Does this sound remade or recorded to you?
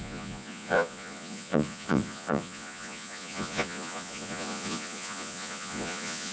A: remade